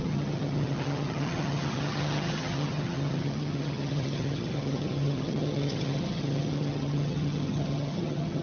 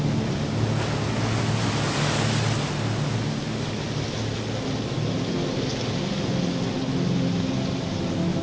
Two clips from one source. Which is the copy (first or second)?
first